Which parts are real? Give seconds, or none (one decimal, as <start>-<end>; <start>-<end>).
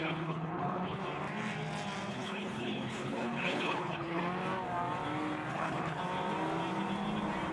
1.0-2.1; 4.2-5.5; 6.0-7.5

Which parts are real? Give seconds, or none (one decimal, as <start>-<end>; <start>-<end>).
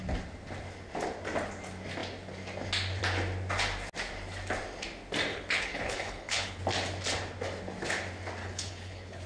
0.0-5.3; 6.6-8.4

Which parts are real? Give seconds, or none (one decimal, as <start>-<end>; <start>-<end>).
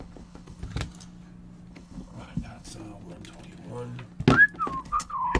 0.6-1.7; 2.7-4.8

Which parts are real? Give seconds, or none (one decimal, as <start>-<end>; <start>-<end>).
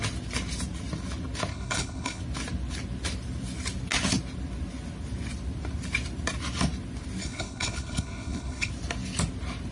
0.0-1.5; 2.2-7.2; 8.7-9.7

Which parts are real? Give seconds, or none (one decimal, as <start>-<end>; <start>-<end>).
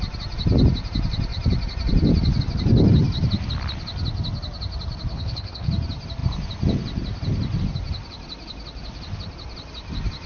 0.0-5.1; 5.7-10.3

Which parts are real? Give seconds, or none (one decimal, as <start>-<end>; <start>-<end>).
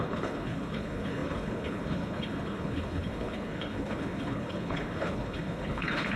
none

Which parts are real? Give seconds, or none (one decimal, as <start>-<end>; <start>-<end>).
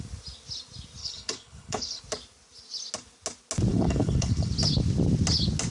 0.0-1.0; 2.0-3.7; 4.5-5.7